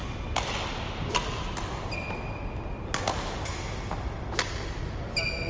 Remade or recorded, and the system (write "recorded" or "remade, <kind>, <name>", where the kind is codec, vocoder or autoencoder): recorded